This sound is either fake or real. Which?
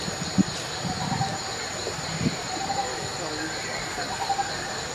fake